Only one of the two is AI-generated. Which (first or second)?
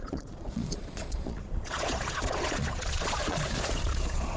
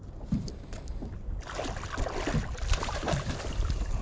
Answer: first